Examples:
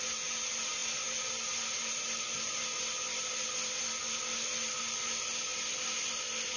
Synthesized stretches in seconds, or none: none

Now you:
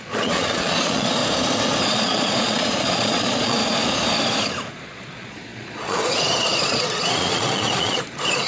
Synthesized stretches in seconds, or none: 0.0-1.2 (vocoder, Vocos); 1.8-3.6; 4.7-8.5